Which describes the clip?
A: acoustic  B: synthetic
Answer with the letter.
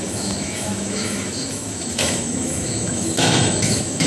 B